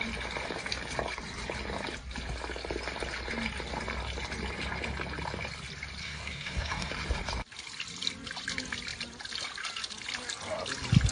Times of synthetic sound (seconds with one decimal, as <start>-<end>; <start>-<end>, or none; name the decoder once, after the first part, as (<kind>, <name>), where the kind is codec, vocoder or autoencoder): 6.0-6.9 (codec, SNAC)